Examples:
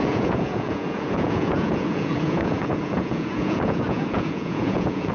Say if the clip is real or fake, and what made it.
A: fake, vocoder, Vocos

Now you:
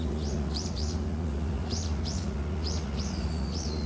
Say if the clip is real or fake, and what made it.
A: fake, vocoder, Vocos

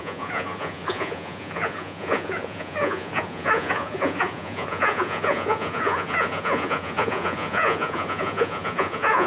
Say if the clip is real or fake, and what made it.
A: fake, vocoder, Vocos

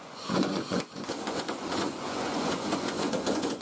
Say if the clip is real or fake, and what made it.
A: fake, vocoder, Vocos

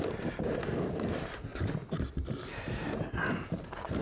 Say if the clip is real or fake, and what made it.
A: real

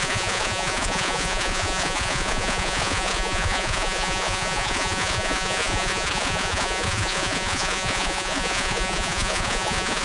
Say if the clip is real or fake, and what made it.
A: fake, vocoder, Vocos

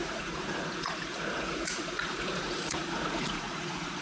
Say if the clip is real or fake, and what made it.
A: fake, vocoder, Vocos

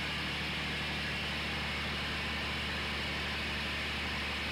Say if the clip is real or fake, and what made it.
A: real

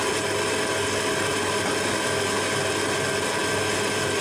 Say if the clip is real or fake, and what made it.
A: real